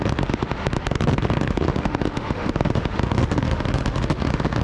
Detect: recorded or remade remade